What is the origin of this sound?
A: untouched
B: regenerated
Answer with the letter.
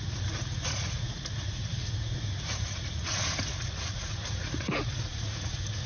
B